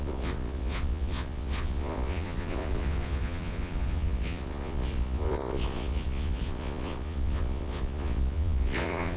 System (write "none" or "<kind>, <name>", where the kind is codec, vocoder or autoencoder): vocoder, Vocos